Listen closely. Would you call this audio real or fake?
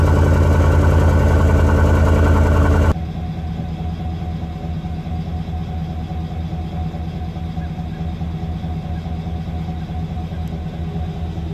real